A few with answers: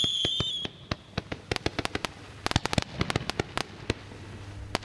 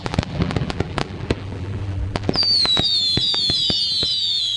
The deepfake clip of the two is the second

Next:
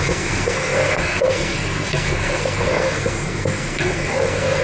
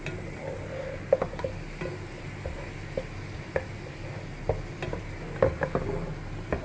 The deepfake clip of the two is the first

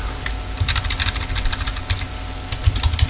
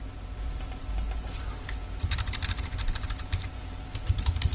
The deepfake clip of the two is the second